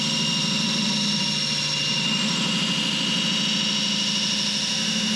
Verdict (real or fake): real